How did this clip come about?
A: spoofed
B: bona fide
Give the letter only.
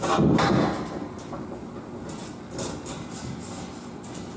B